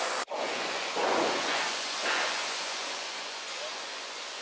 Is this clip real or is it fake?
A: fake